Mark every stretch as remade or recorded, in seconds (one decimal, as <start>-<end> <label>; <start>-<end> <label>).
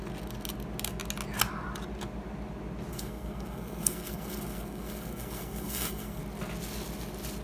0.0-2.9 recorded; 2.9-6.2 remade; 6.2-7.4 recorded